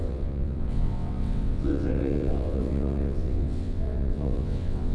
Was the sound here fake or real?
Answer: fake